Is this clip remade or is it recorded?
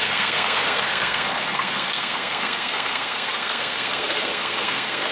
remade